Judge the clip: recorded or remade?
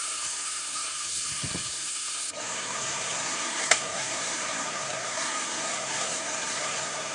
remade